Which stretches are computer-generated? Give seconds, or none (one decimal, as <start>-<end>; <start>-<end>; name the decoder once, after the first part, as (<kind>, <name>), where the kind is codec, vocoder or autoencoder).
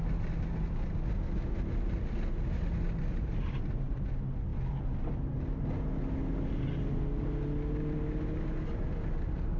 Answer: 3.1-4.0 (vocoder, BigVGAN v2)